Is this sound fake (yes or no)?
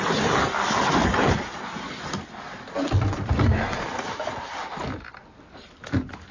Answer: no